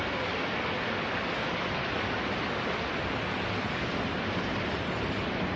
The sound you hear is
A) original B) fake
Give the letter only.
A